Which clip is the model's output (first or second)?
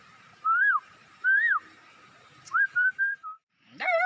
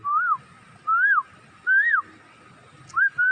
first